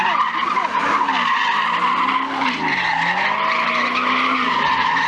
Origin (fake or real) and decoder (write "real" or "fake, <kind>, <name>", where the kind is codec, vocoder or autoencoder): real